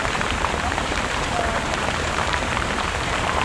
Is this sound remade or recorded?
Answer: remade